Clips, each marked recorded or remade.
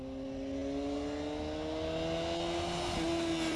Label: recorded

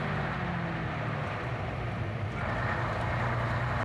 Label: recorded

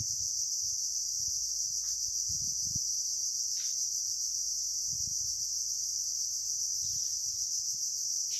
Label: recorded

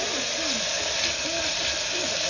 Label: recorded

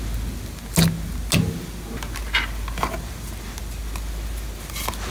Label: recorded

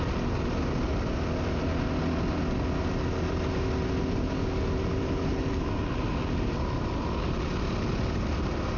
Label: recorded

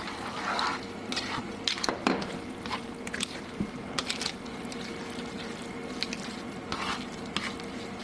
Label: recorded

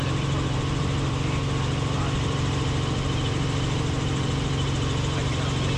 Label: recorded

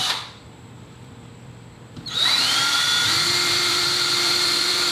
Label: remade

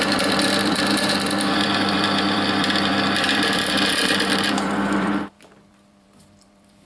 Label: remade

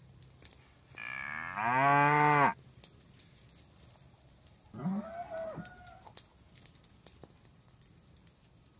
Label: recorded